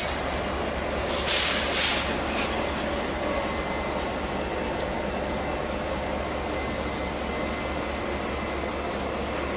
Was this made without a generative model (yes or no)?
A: yes